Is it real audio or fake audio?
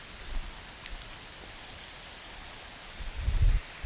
real